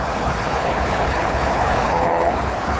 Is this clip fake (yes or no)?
yes